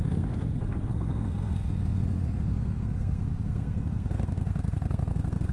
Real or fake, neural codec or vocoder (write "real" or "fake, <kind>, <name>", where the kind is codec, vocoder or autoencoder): fake, codec, SNAC